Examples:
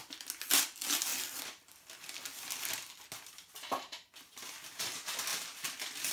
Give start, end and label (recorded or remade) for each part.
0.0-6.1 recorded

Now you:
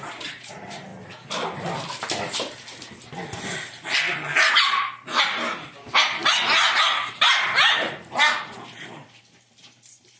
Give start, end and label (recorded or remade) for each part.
0.0-0.9 remade; 0.9-5.2 recorded; 5.2-6.2 remade; 6.2-7.1 recorded; 7.1-10.2 remade

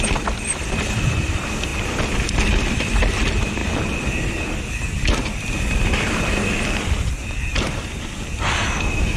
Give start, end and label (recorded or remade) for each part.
0.0-9.2 recorded

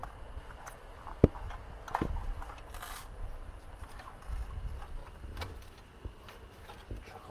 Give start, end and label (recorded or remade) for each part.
0.0-3.0 recorded; 3.0-4.2 remade; 4.2-5.0 recorded; 5.0-5.7 remade; 5.7-7.3 recorded

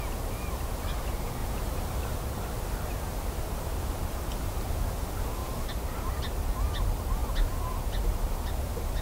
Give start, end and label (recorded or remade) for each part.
0.0-1.4 recorded; 1.4-2.2 remade; 2.2-5.4 recorded; 5.4-6.2 remade; 6.2-9.0 recorded

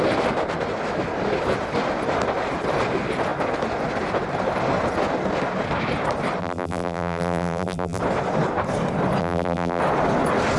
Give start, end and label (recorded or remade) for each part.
0.0-6.4 recorded; 6.4-8.0 remade; 8.0-9.2 recorded; 9.2-9.8 remade; 9.8-10.6 recorded